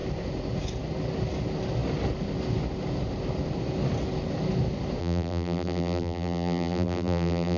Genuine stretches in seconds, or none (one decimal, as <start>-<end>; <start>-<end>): 0.0-5.0